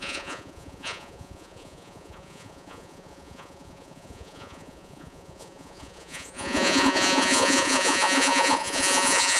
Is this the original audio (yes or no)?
no